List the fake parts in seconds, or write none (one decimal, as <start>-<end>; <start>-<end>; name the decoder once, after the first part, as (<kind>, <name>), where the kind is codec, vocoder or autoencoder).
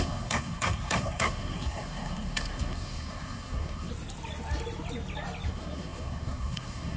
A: 0.0-3.9 (codec, SNAC); 5.5-7.0